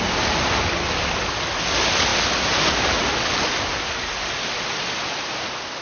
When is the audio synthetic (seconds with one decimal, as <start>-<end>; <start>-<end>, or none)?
none